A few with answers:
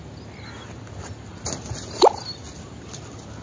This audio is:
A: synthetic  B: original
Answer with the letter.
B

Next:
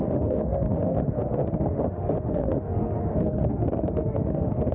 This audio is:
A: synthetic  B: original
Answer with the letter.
A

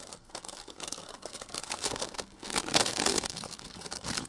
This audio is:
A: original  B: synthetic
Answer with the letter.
B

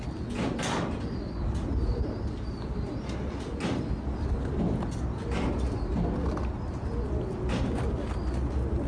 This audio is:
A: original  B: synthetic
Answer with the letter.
A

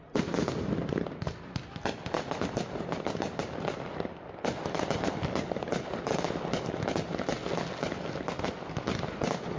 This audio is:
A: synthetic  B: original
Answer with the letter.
B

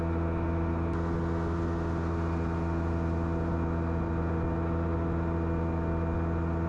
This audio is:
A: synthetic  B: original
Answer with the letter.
B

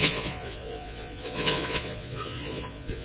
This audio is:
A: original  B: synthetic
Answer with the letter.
B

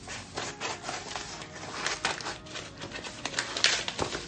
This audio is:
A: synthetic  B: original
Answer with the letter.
B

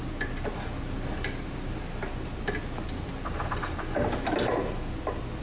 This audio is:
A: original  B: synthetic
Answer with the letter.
A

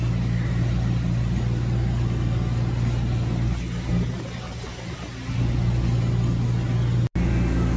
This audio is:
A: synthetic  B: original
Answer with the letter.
B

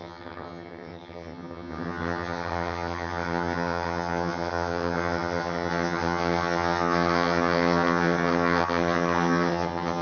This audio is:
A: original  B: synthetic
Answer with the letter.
B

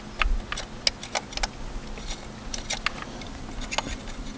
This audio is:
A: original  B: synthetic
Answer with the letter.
A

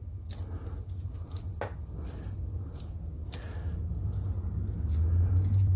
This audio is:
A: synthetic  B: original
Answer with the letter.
B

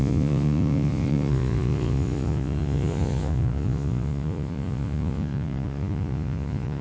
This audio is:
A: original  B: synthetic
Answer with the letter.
B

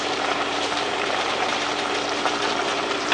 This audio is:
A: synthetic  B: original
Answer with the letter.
A